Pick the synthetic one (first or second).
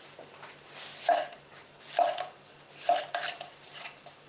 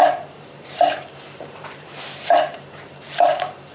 second